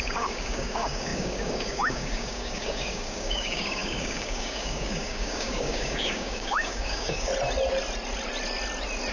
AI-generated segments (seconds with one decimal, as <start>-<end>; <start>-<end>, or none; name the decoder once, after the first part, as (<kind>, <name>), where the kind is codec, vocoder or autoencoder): 0.0-7.3 (codec, DAC)